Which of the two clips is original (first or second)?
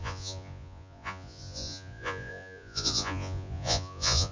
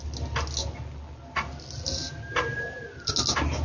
second